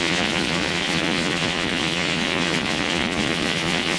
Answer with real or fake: fake